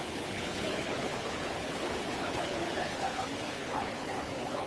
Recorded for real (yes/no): no